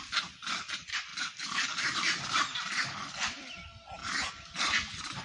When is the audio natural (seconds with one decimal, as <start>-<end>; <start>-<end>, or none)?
0.0-5.2